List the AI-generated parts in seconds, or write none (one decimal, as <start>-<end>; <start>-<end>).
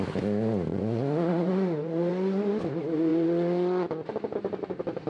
0.7-2.6